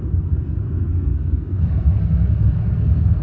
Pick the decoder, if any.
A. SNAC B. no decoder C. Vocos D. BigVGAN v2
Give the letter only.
A